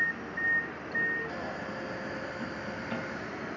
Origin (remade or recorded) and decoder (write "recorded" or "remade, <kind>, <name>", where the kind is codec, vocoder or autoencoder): recorded